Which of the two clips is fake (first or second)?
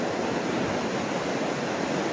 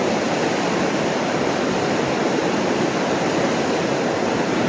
second